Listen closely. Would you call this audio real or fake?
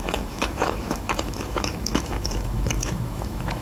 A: fake